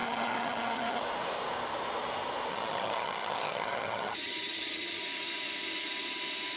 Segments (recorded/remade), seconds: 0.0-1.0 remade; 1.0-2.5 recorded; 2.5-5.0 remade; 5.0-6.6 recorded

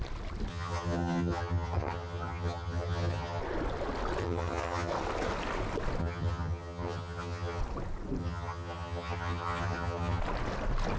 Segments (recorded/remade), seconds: 0.0-0.5 recorded; 0.5-3.4 remade; 3.4-4.2 recorded; 4.2-4.9 remade; 4.9-6.0 recorded; 6.0-7.6 remade; 7.6-8.2 recorded; 8.2-10.2 remade; 10.2-11.0 recorded